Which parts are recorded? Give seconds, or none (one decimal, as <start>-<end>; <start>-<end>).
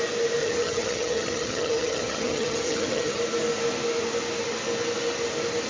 0.0-0.4; 3.2-5.7